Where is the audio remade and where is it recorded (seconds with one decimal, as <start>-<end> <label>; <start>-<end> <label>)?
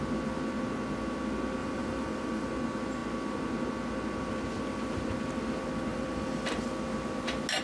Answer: 0.0-1.6 recorded; 1.6-2.5 remade; 2.5-5.9 recorded; 5.9-6.7 remade; 6.7-7.6 recorded